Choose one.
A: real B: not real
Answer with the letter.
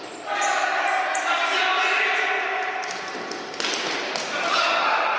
A